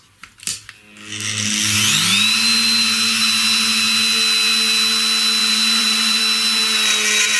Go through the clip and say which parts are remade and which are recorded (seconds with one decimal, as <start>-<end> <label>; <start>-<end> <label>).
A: 0.0-5.4 recorded; 5.4-6.2 remade; 6.2-7.4 recorded